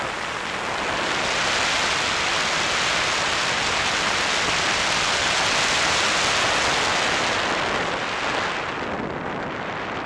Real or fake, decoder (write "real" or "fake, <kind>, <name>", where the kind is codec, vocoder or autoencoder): real